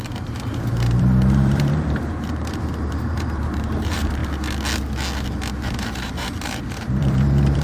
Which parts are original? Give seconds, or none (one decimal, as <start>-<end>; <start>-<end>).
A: 4.2-5.5